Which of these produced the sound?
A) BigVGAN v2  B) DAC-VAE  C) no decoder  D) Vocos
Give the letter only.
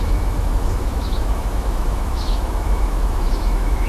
B